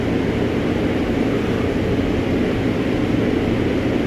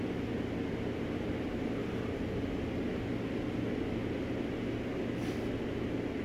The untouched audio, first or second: second